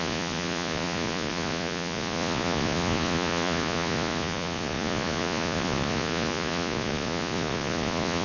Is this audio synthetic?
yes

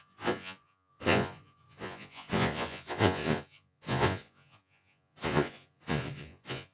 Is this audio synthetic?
yes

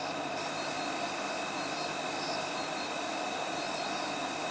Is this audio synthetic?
no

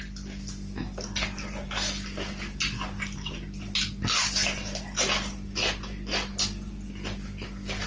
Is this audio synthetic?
no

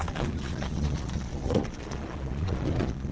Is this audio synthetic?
yes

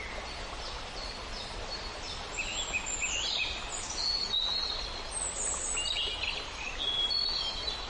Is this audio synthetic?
no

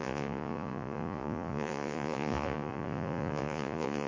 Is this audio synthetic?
yes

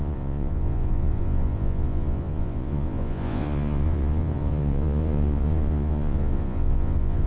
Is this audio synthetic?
yes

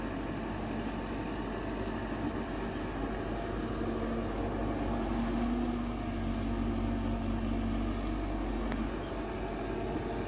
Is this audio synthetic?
no